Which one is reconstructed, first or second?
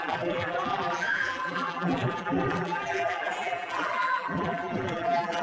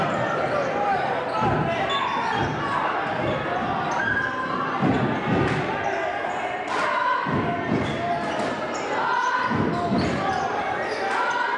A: first